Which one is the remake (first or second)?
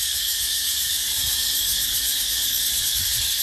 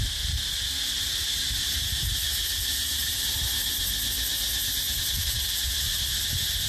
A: first